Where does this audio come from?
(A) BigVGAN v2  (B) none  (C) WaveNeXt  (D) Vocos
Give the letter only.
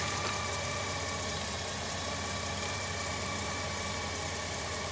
B